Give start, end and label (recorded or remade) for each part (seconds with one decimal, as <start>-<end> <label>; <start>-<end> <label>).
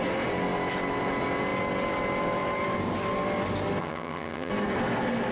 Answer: 0.0-3.8 recorded; 3.8-4.5 remade; 4.5-5.3 recorded